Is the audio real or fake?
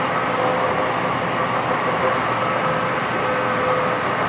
real